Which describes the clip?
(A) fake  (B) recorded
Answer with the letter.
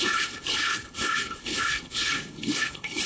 A